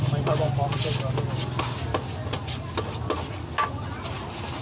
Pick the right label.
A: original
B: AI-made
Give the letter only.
A